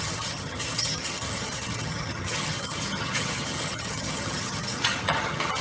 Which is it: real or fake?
fake